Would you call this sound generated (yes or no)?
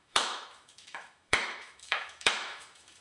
yes